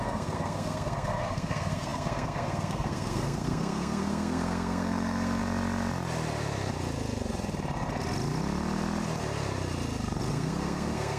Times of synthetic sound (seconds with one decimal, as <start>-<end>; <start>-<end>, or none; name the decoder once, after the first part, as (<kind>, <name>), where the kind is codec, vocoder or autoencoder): 0.0-5.4 (codec, SNAC); 10.3-11.2